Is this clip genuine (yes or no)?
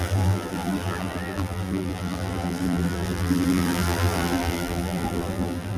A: no